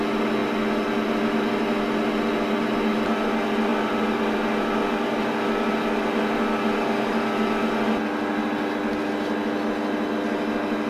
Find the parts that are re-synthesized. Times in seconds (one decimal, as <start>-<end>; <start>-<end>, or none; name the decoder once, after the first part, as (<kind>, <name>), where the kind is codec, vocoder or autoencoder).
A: none